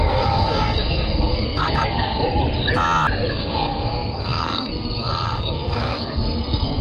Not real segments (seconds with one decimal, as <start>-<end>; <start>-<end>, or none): 0.0-2.2; 3.3-6.8